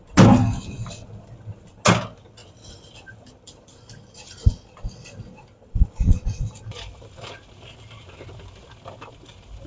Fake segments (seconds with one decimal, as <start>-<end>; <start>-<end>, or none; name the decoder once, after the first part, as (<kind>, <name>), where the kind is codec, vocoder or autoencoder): 2.4-7.3 (vocoder, BigVGAN v2)